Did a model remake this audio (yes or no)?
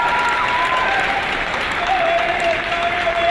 yes